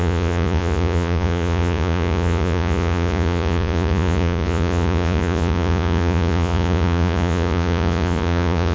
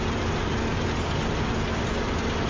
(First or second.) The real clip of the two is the second